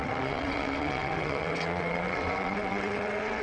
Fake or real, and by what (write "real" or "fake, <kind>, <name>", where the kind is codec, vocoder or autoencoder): fake, vocoder, WaveNeXt